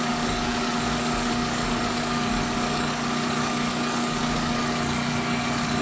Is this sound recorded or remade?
remade